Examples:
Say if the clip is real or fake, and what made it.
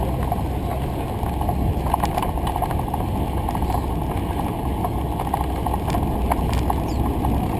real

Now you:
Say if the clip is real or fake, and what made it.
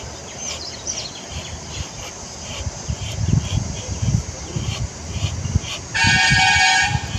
real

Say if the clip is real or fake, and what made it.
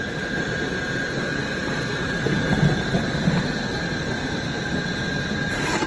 fake, vocoder, BigVGAN v2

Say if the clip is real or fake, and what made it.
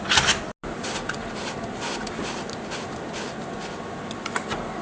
real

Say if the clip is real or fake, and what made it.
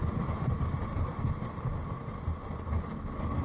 real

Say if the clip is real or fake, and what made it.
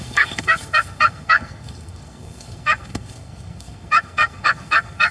fake, codec, SNAC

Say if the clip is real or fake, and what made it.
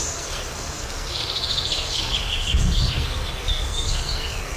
fake, codec, SNAC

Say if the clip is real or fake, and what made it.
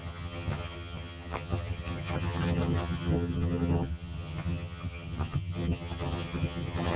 fake, vocoder, HiFi-GAN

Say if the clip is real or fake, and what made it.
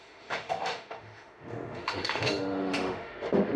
fake, autoencoder, DAC-VAE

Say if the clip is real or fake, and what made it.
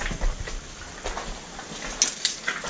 real